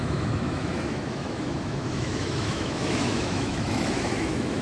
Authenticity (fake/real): fake